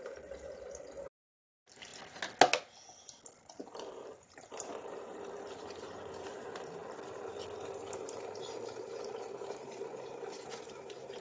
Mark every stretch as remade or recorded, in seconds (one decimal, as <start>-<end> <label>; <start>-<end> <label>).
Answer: 0.0-1.9 remade; 1.9-3.4 recorded; 3.4-6.8 remade; 6.8-7.9 recorded; 7.9-11.2 remade